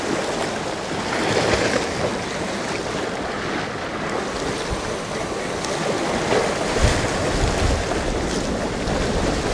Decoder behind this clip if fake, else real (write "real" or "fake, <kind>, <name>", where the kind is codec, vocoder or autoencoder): real